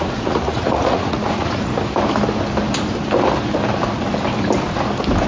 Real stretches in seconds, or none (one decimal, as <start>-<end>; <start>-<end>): 1.7-5.3